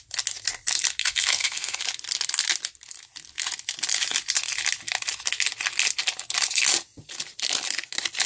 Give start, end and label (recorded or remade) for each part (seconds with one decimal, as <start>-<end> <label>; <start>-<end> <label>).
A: 0.0-1.0 recorded; 1.0-1.8 remade; 1.8-8.3 recorded